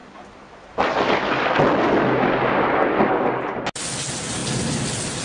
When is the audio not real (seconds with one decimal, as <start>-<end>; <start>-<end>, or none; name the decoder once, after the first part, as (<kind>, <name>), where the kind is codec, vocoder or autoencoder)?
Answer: none